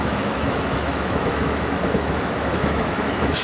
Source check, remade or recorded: remade